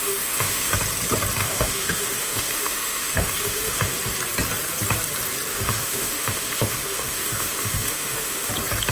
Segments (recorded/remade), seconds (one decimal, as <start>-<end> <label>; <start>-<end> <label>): 0.0-0.7 remade; 0.7-1.4 recorded; 1.4-4.0 remade; 4.0-5.5 recorded; 5.5-8.5 remade; 8.5-8.9 recorded